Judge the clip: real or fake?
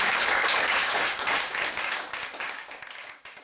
fake